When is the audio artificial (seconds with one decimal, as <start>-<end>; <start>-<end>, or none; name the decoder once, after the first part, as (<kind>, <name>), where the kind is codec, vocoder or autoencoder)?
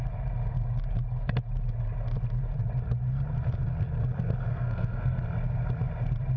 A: 4.5-5.2 (codec, SNAC)